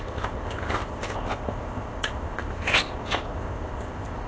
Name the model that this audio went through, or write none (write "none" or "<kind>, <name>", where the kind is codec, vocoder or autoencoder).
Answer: codec, ZipCodec